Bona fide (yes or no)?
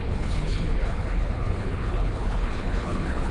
no